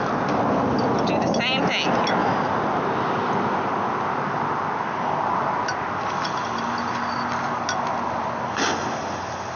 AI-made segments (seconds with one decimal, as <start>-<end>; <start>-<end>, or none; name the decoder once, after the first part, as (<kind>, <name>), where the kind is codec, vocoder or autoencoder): none